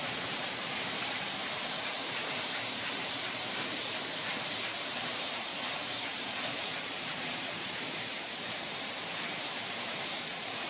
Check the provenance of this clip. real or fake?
fake